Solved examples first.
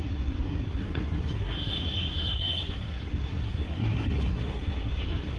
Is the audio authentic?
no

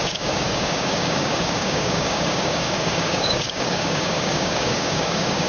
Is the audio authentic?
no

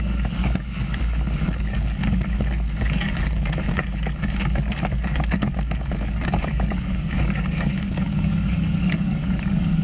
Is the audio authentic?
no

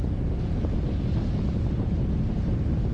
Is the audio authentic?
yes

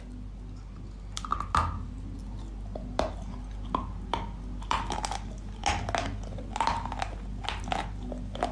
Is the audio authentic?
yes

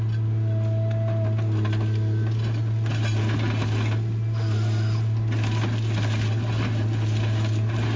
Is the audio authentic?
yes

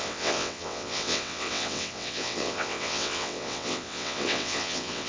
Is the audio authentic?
no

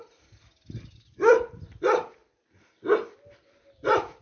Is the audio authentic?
yes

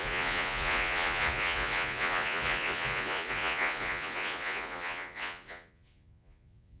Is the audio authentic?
no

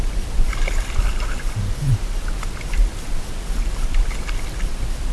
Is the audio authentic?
yes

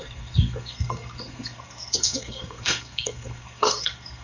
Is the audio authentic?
no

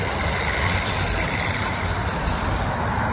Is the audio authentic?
yes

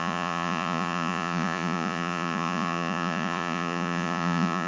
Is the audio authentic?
no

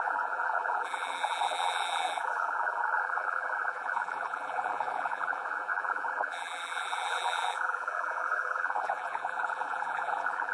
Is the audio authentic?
no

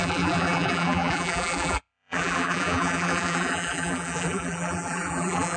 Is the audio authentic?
no